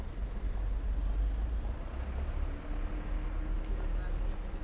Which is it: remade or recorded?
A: recorded